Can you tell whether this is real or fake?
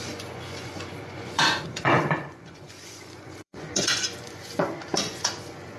fake